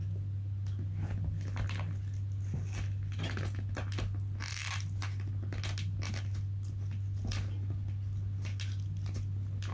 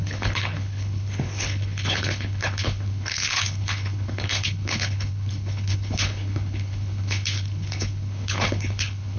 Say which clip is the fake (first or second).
second